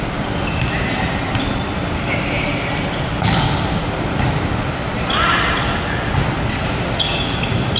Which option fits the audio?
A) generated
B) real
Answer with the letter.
B